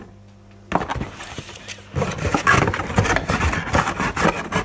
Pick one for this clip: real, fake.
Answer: real